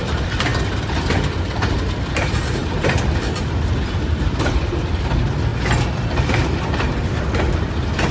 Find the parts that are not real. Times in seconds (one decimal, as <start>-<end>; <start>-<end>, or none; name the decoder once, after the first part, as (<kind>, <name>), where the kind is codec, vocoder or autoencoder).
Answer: 0.0-0.5 (vocoder, BigVGAN v2); 1.5-5.5; 6.2-8.1